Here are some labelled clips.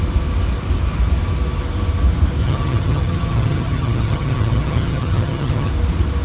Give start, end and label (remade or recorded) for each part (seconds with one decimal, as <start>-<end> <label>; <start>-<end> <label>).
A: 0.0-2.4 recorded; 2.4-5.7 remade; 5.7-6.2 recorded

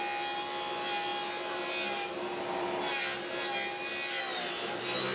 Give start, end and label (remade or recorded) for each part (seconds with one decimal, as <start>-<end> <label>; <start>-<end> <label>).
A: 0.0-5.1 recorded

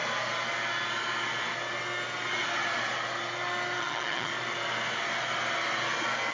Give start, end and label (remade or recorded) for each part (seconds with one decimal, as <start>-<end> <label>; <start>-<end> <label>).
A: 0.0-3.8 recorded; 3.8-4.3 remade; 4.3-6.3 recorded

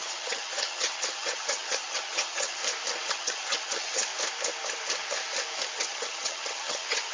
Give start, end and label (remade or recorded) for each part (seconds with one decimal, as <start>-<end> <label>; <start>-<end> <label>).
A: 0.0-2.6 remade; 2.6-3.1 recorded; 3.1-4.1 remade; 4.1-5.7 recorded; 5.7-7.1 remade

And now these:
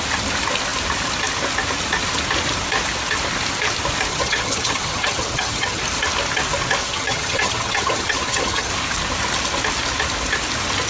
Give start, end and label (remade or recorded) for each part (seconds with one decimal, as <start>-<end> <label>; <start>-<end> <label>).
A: 0.0-4.1 recorded; 4.1-5.8 remade; 5.8-6.8 recorded; 6.8-8.7 remade; 8.7-10.9 recorded